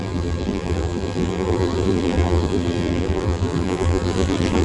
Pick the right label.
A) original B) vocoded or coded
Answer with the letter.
B